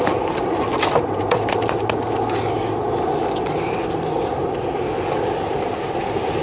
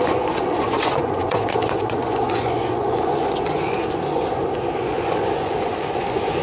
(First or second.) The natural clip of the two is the first